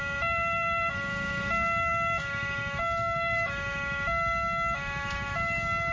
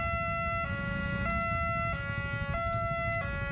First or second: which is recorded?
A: second